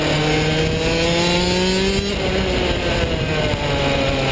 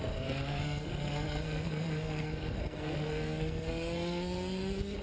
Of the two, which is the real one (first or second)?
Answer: first